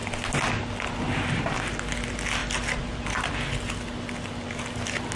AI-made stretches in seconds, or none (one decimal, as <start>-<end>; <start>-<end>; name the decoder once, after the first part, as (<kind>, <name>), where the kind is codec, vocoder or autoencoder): none